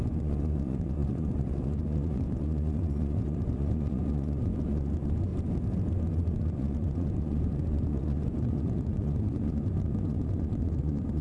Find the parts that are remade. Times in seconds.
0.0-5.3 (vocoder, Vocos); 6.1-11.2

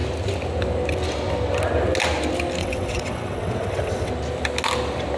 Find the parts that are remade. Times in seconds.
2.6-4.1 (vocoder, WaveNeXt)